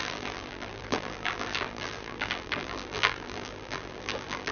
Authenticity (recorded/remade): remade